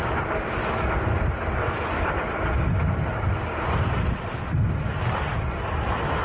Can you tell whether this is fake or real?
fake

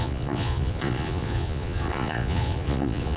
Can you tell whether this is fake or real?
fake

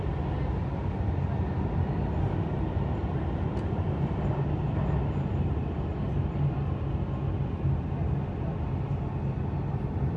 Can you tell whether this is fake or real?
real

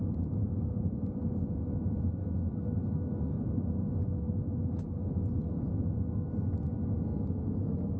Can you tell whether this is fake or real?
real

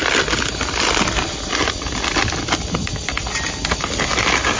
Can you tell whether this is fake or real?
real